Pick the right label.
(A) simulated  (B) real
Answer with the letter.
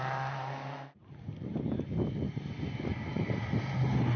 B